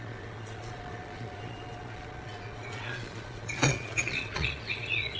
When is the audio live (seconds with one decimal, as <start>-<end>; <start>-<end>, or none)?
none